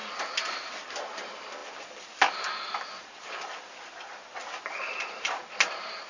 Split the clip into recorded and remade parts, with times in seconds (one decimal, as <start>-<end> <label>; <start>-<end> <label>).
0.0-0.7 remade; 0.7-1.6 recorded; 1.6-4.8 remade; 4.8-6.1 recorded